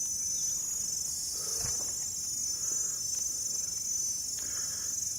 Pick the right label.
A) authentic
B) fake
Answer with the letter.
A